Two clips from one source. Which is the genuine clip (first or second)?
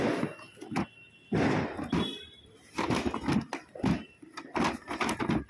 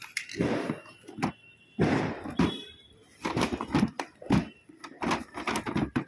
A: first